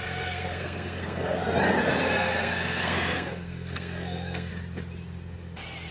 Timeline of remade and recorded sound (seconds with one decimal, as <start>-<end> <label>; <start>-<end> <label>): 0.0-1.4 remade; 1.4-2.1 recorded; 2.1-4.5 remade; 4.5-5.9 recorded